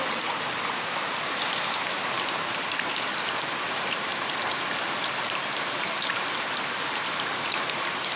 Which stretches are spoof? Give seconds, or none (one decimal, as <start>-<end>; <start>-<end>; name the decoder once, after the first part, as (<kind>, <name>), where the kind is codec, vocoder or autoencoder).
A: 0.0-4.1 (vocoder, BigVGAN v2); 4.8-8.2